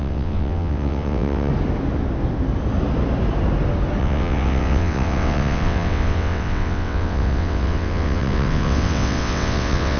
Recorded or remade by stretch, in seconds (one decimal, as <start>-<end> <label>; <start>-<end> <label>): 0.0-1.5 remade; 1.5-4.0 recorded; 4.0-10.0 remade